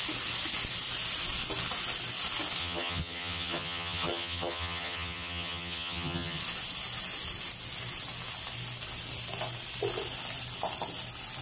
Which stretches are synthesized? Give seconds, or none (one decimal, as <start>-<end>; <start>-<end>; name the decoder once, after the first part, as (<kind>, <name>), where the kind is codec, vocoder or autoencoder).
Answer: 2.6-6.4 (vocoder, HiFi-GAN)

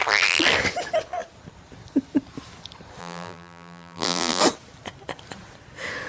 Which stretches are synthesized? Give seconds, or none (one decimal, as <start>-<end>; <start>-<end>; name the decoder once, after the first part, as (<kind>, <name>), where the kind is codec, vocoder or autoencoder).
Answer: 3.0-4.4 (vocoder, BigVGAN v2)

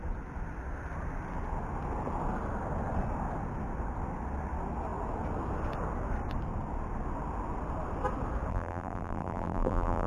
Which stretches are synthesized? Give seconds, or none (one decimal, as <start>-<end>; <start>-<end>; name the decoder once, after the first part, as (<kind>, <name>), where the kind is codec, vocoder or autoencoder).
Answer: 8.5-10.1 (vocoder, BigVGAN v2)